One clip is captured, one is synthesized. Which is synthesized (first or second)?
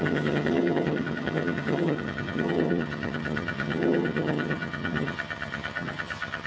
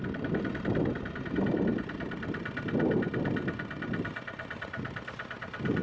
first